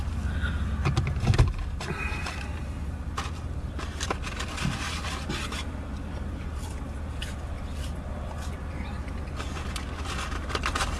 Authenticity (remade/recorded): recorded